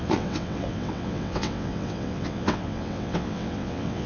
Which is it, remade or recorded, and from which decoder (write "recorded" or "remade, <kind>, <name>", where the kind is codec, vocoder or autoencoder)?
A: remade, vocoder, WaveNeXt